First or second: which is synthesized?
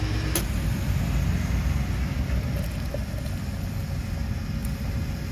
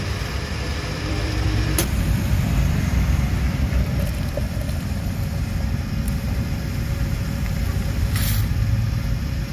second